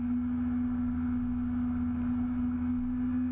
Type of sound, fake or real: real